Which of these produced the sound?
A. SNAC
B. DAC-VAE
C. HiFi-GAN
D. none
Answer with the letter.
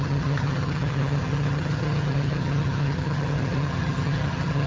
C